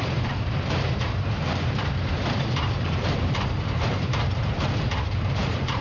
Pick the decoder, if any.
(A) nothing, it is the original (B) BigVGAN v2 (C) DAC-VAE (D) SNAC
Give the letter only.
B